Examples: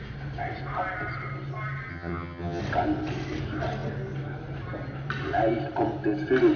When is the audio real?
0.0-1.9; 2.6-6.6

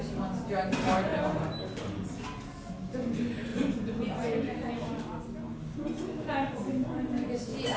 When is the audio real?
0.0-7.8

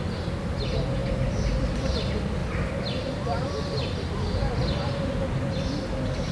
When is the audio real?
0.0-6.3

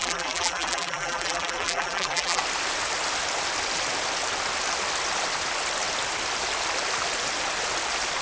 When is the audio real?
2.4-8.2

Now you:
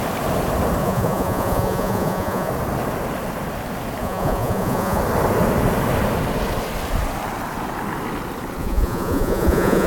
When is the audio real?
0.0-0.8; 2.5-4.0; 5.0-8.6

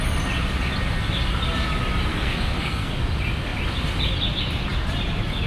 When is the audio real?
0.0-2.1; 2.9-5.5

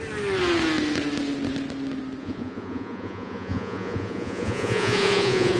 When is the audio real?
0.0-2.2

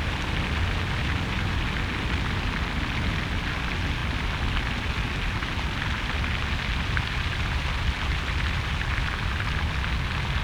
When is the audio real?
0.0-10.4